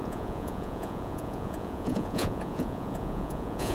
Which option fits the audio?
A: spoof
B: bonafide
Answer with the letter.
A